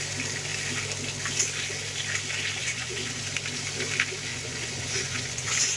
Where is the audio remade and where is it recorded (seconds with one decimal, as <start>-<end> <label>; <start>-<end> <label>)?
0.0-2.6 recorded; 2.6-3.2 remade; 3.2-4.3 recorded; 4.3-5.8 remade

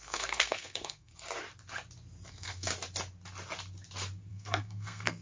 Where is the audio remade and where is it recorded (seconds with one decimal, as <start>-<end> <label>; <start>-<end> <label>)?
0.0-1.1 remade; 1.1-2.3 recorded; 2.3-2.7 remade; 2.7-4.3 recorded; 4.3-5.2 remade

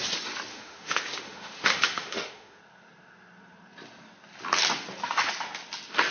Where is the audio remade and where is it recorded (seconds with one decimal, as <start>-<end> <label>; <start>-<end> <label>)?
0.0-0.5 recorded; 0.5-2.6 remade; 2.6-6.1 recorded

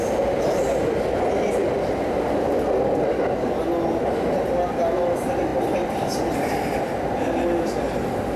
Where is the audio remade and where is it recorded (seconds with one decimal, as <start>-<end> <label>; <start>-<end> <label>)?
0.0-8.4 recorded